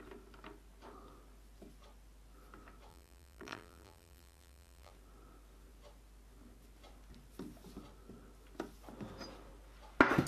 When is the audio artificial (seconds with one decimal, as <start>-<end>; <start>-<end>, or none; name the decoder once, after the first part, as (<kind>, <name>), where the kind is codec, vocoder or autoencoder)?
2.9-4.9 (vocoder, BigVGAN v2)